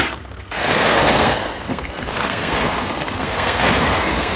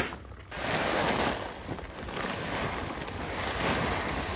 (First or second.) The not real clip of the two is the first